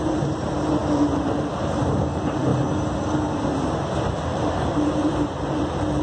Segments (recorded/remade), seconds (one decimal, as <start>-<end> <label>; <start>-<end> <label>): 0.0-2.5 remade; 2.5-3.9 recorded; 3.9-6.0 remade